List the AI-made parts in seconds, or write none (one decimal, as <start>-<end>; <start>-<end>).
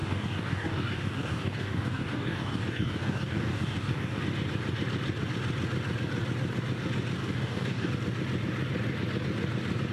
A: 0.0-4.2; 7.2-7.9